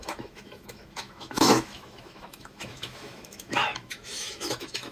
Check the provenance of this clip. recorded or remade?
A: remade